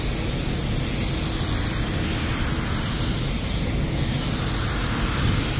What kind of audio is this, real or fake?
real